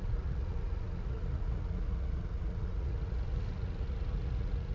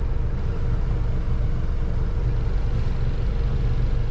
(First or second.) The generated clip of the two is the first